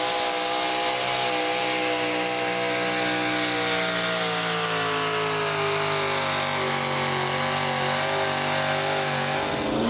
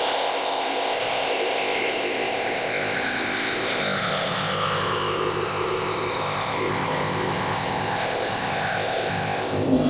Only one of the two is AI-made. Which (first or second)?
second